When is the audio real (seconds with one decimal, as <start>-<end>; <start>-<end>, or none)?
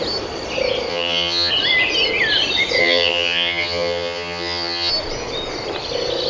0.0-0.9; 1.5-2.8; 4.9-6.3